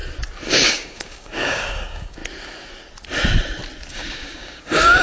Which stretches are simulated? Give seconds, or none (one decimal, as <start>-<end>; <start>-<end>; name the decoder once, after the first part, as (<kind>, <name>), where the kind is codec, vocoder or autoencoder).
0.5-2.2 (codec, DAC); 3.9-5.0